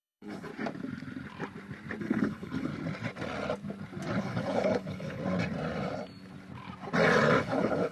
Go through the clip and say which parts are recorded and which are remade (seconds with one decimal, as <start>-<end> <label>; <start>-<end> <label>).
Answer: 0.0-0.5 remade; 0.5-2.0 recorded; 2.0-2.7 remade; 2.7-4.2 recorded; 4.2-5.2 remade; 5.2-7.4 recorded; 7.4-7.9 remade